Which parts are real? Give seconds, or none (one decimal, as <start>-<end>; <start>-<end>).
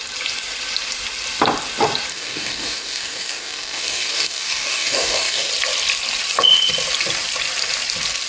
0.0-2.1; 5.5-8.3